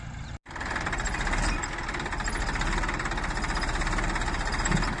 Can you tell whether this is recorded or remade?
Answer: recorded